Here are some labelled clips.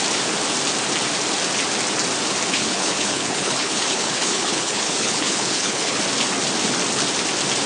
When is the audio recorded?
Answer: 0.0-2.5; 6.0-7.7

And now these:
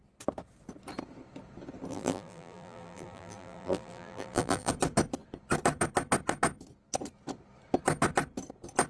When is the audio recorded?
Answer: 0.0-1.9; 4.7-8.9

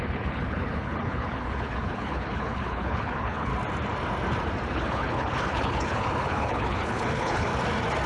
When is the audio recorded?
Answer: 3.5-4.7; 7.5-8.1